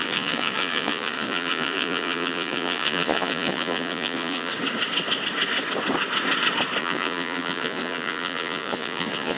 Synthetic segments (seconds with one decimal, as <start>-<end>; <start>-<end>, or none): 0.0-4.5; 6.8-9.4